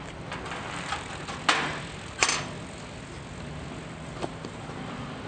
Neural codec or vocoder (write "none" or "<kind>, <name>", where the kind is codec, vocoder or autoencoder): none